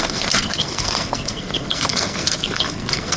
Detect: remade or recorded remade